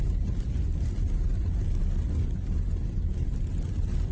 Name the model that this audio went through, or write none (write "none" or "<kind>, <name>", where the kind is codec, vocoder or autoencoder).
none